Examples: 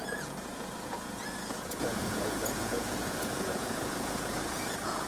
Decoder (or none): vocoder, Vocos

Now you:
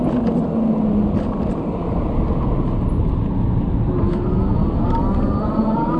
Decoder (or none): none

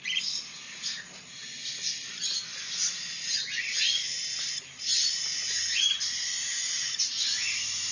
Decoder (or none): none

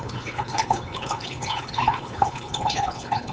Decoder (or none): codec, HILCodec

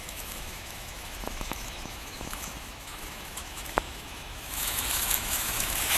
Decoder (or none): autoencoder, DAC-VAE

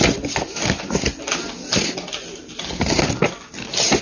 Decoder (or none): none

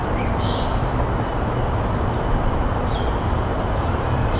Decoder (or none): vocoder, BigVGAN v2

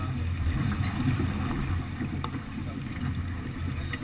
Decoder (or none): none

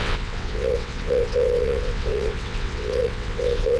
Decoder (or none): vocoder, WaveNeXt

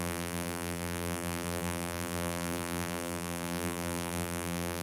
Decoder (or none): vocoder, BigVGAN v2